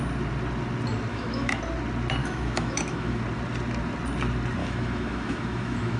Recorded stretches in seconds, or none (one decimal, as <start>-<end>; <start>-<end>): 0.0-1.1; 1.6-2.2; 3.2-4.6